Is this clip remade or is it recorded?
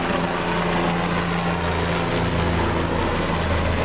recorded